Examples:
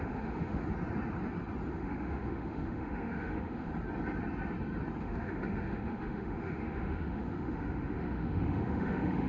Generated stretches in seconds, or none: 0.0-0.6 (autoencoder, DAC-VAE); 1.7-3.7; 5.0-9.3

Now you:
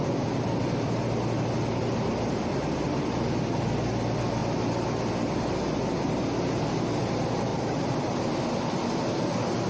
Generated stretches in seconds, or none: 7.5-8.4 (vocoder, BigVGAN v2)

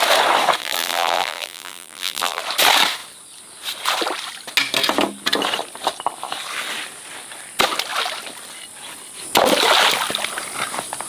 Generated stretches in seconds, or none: 0.6-2.4 (vocoder, BigVGAN v2)

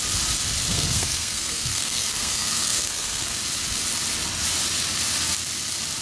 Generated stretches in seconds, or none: 0.7-3.4 (codec, SNAC)

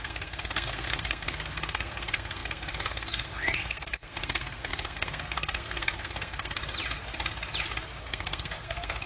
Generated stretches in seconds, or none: 0.0-6.6 (codec, SNAC); 8.0-9.1

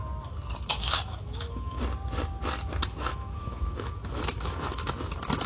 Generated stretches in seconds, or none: 0.7-1.8 (autoencoder, DAC-VAE); 3.1-4.9

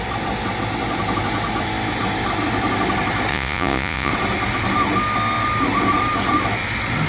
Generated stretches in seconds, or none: 3.3-4.1 (vocoder, Vocos)

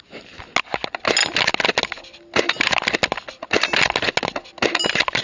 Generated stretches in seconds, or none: none